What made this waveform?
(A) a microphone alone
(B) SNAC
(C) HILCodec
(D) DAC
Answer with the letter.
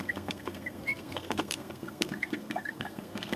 B